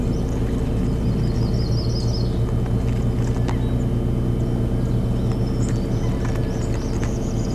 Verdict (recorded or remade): recorded